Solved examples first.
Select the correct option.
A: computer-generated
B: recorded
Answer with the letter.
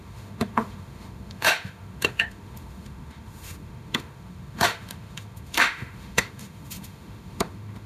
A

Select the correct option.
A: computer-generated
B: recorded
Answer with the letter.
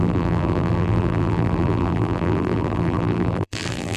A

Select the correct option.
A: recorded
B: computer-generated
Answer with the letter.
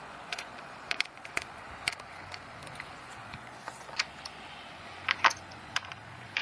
B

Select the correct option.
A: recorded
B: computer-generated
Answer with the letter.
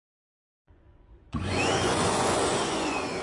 B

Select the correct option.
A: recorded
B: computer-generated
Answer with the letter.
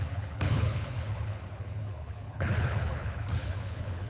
B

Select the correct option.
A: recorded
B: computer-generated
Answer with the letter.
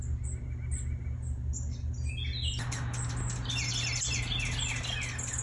A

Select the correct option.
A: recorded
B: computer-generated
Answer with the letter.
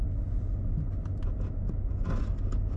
A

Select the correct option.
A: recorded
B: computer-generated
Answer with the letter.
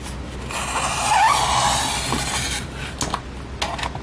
A